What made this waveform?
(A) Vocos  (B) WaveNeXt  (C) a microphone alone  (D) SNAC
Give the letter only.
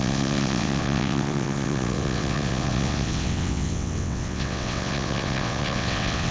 B